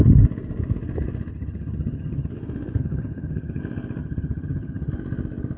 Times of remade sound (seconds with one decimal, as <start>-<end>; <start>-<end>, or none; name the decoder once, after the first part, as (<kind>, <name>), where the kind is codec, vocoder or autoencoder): 1.3-2.3 (vocoder, HiFi-GAN); 2.8-3.6; 4.0-4.9